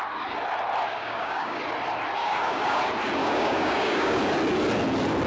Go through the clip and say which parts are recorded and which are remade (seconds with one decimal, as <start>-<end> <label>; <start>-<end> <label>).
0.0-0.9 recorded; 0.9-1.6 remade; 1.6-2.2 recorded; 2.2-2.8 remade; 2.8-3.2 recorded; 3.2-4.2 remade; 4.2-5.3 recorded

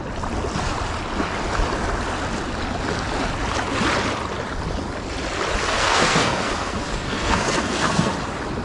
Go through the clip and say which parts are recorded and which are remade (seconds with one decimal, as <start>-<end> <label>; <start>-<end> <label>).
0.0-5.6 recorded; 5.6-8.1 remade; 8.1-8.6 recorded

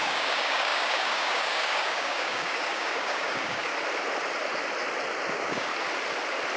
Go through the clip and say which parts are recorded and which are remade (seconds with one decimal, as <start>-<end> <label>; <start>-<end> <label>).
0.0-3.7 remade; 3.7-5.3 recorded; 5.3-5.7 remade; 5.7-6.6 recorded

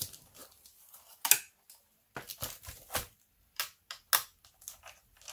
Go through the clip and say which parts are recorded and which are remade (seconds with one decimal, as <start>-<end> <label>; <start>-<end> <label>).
0.0-5.3 recorded

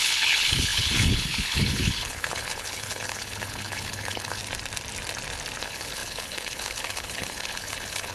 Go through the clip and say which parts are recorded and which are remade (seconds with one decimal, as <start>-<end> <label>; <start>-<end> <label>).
0.0-4.4 remade; 4.4-5.6 recorded; 5.6-8.1 remade